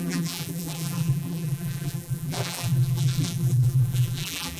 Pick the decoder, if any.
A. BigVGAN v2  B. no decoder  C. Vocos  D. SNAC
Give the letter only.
A